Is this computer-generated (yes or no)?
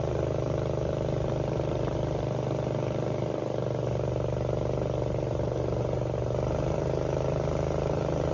no